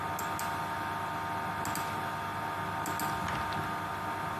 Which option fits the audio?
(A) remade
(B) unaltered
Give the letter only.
B